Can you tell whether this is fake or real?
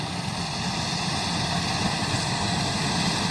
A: real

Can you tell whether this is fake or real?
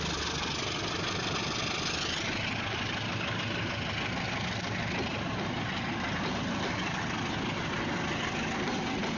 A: real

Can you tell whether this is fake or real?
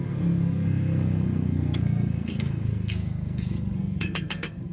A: fake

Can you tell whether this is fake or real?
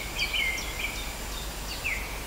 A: real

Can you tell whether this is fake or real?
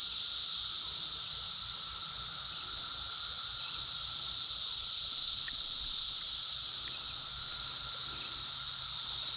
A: real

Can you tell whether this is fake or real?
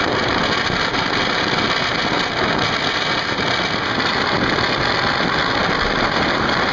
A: real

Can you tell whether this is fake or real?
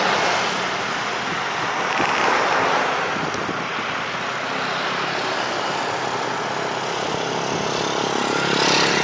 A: real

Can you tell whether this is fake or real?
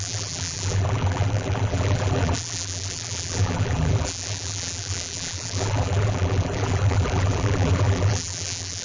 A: fake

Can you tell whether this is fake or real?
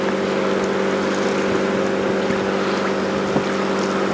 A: real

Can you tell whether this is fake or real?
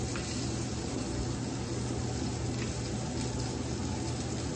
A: real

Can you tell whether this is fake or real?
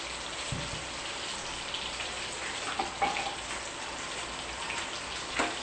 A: real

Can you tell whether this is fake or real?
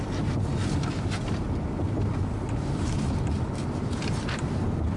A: real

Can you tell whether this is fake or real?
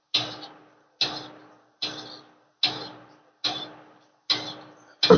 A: real